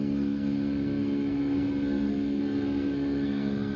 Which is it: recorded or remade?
remade